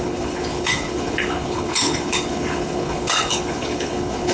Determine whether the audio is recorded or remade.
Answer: remade